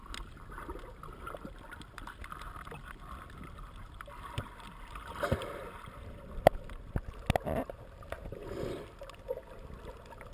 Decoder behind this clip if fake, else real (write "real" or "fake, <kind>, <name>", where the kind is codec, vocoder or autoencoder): real